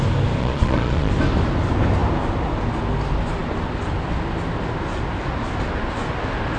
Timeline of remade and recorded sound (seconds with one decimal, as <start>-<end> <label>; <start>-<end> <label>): 0.0-0.4 recorded; 0.4-1.1 remade; 1.1-6.6 recorded